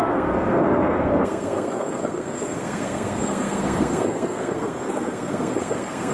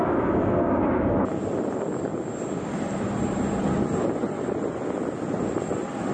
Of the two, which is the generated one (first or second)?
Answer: first